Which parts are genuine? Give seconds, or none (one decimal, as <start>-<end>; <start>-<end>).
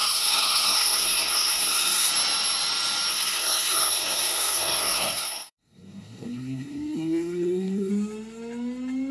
2.1-3.1; 7.9-9.1